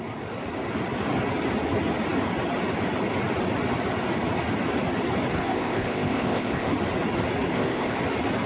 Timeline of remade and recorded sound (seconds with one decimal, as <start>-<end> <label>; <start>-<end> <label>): 0.0-5.4 recorded; 5.4-6.7 remade; 6.7-7.5 recorded; 7.5-8.0 remade; 8.0-8.5 recorded